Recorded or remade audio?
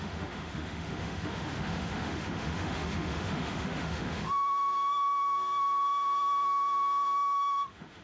remade